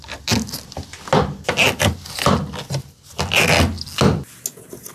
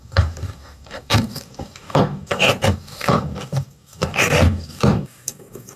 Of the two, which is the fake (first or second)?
second